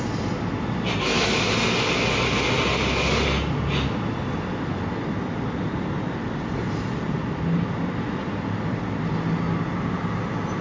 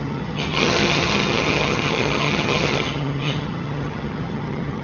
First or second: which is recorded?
first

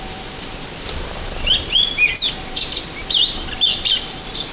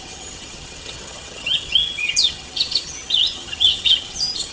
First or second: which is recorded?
first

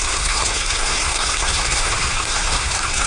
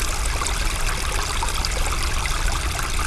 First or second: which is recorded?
second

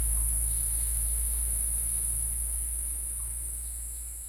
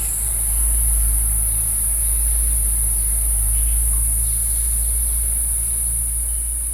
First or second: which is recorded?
second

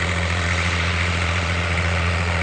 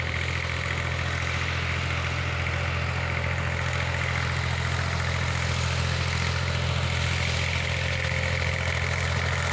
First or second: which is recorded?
second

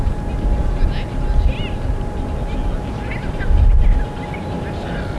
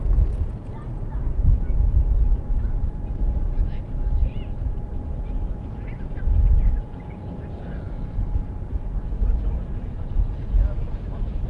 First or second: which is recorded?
first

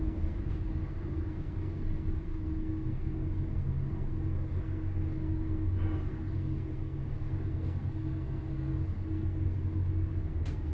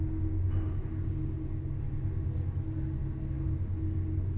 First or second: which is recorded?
second